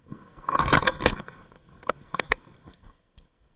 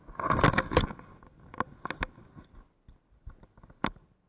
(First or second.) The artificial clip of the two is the first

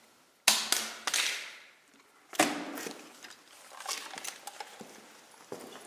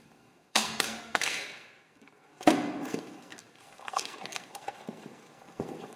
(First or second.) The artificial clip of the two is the second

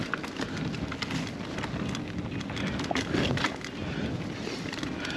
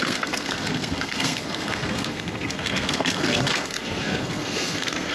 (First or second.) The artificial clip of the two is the second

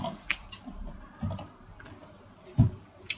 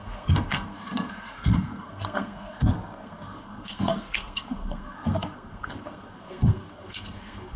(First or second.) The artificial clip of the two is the second